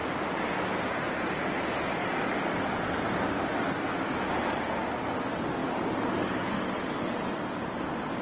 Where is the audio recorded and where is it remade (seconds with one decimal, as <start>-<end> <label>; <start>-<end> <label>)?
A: 0.0-2.0 recorded; 2.0-3.2 remade; 3.2-8.2 recorded